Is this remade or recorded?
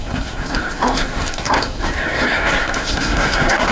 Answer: remade